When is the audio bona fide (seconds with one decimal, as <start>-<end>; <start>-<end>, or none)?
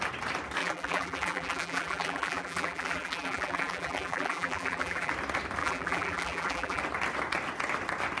0.0-0.6; 5.1-5.6; 6.8-8.2